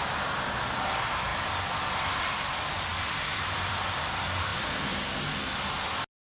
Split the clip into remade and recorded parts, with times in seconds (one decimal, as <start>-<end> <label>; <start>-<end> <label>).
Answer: 0.0-1.3 recorded; 1.3-2.2 remade; 2.2-2.9 recorded; 2.9-4.1 remade; 4.1-4.5 recorded; 4.5-5.1 remade; 5.1-6.4 recorded